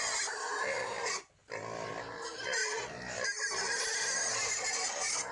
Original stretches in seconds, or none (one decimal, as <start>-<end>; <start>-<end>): 0.0-5.3